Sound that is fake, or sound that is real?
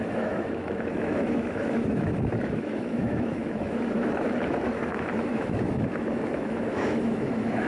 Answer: fake